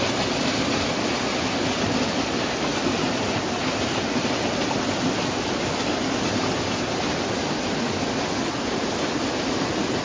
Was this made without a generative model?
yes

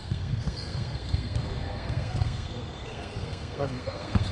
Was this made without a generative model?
no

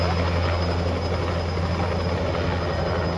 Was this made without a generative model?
yes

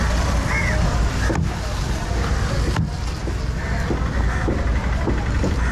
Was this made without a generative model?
yes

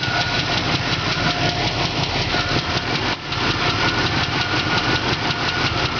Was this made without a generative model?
yes